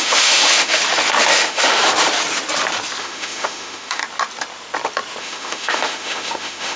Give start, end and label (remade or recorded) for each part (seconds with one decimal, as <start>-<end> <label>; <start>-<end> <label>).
0.0-0.8 remade; 0.8-1.3 recorded; 1.3-1.8 remade; 1.8-3.0 recorded; 3.0-4.0 remade; 4.0-5.2 recorded; 5.2-6.8 remade